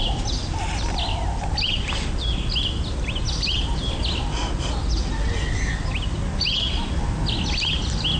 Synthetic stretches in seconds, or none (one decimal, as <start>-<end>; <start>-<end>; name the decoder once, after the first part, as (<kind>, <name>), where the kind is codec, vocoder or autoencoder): none